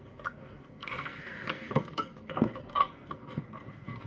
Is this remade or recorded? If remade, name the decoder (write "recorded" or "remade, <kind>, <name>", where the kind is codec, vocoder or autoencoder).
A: remade, codec, SNAC